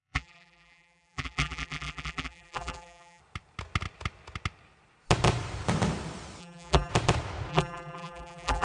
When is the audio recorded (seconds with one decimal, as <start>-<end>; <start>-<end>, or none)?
3.2-6.4; 6.9-7.5